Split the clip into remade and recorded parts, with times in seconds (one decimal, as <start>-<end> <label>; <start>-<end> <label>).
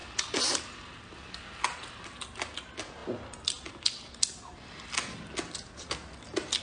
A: 0.0-6.6 recorded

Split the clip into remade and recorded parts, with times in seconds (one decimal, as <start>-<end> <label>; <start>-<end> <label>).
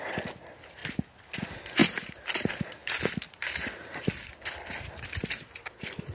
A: 0.0-0.8 remade; 0.8-1.4 recorded; 1.4-1.8 remade; 1.8-2.4 recorded; 2.4-6.1 remade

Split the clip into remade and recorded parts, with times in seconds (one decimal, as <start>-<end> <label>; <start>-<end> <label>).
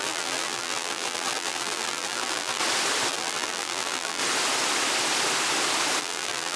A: 0.0-2.6 remade; 2.6-3.1 recorded; 3.1-4.2 remade; 4.2-6.0 recorded; 6.0-6.6 remade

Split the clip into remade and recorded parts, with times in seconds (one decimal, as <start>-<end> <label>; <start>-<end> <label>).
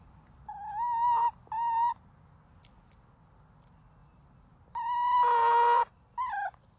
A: 0.0-6.8 recorded